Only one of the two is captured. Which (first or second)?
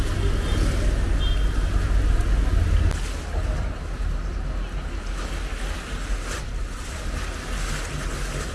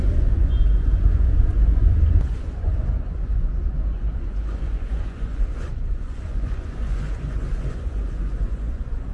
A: first